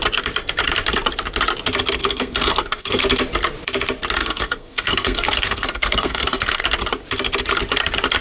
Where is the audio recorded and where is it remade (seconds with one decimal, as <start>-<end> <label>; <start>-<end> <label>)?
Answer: 0.0-2.0 recorded; 2.0-3.0 remade; 3.0-4.2 recorded; 4.2-6.6 remade; 6.6-8.2 recorded